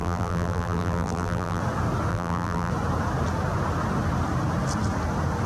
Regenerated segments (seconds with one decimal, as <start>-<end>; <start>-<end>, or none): 0.0-1.6; 2.1-2.7